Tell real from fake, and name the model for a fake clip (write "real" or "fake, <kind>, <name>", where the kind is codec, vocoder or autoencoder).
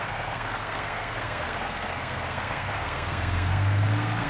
fake, codec, SNAC